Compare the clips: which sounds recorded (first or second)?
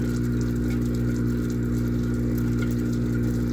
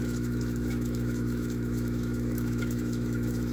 first